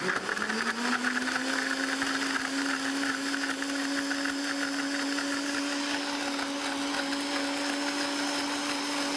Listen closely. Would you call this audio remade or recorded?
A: recorded